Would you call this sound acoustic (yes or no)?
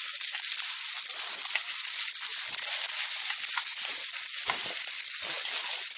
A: yes